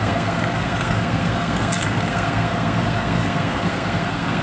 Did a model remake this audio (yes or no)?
yes